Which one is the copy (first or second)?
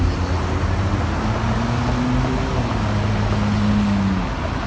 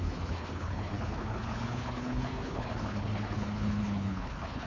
second